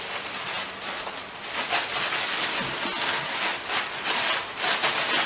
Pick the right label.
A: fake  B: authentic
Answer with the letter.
B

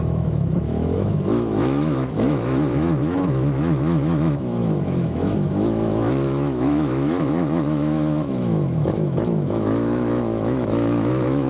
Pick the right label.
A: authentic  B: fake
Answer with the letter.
B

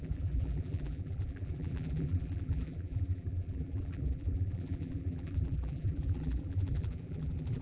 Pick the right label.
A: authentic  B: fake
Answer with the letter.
B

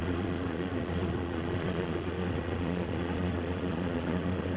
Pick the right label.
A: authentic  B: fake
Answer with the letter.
B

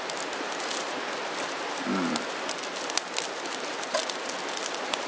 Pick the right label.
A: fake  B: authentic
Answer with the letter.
B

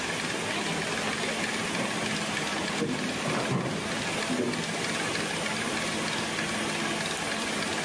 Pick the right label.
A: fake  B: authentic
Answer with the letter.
B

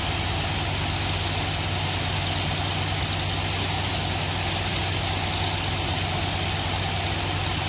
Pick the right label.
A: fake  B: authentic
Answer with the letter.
B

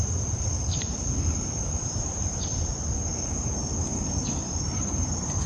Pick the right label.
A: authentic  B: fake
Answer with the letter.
B